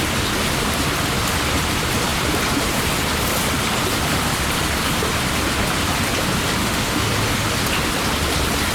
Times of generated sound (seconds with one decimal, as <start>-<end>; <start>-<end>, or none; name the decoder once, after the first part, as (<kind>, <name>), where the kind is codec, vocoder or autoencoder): 6.6-7.1 (autoencoder, DAC-VAE)

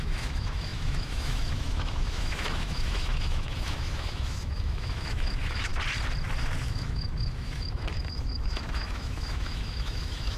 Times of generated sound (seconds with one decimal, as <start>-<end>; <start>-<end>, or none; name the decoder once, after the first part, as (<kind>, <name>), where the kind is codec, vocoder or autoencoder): 0.0-5.7 (autoencoder, DAC-VAE); 6.6-10.4

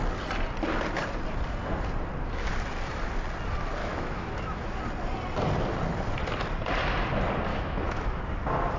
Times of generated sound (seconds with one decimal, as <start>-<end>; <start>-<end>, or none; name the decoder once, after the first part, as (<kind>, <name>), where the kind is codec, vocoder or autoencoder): 3.8-4.8 (autoencoder, DAC-VAE); 7.5-8.2

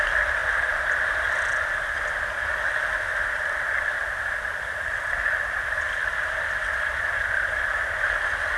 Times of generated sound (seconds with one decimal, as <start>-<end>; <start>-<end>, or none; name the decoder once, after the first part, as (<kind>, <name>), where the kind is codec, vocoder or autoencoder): none